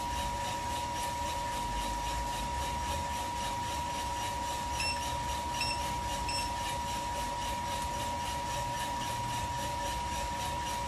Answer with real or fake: real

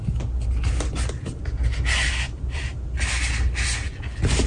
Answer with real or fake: real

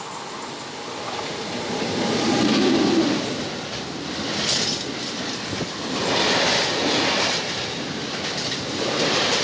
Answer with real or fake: real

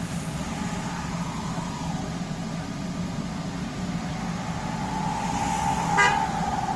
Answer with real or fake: real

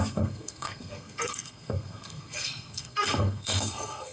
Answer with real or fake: fake